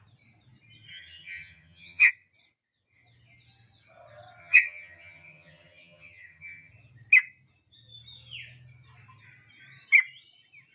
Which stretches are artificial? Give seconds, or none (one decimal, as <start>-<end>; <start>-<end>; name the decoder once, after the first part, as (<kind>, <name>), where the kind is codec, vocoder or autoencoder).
0.9-2.1 (vocoder, HiFi-GAN); 4.4-6.7